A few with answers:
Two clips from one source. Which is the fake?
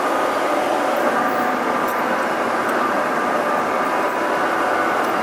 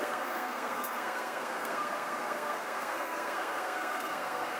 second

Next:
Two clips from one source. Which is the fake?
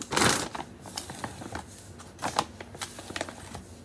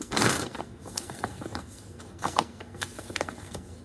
second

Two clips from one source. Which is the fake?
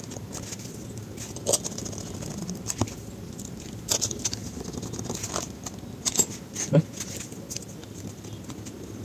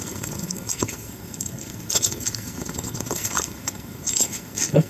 second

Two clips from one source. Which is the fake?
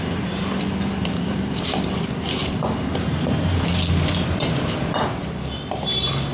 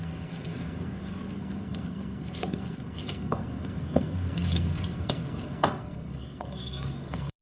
second